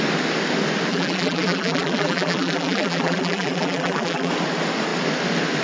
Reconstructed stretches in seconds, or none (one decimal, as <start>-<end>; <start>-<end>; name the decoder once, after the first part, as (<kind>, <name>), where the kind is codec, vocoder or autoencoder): 0.9-4.3 (vocoder, BigVGAN v2)